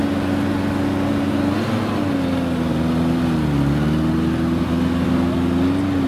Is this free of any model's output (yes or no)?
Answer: yes